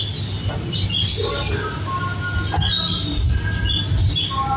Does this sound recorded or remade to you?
recorded